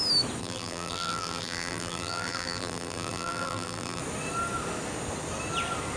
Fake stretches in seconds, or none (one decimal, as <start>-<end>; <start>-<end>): 0.4-4.0